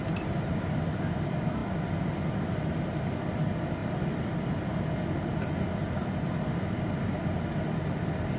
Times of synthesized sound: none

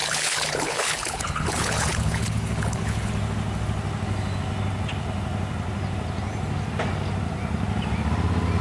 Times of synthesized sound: 0.0-3.1

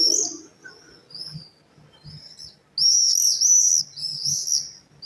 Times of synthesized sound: none

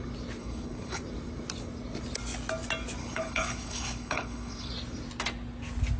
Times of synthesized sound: 0.4-1.0; 3.0-4.7

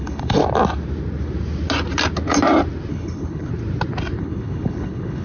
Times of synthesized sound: 0.0-0.4; 2.9-3.5; 4.2-5.2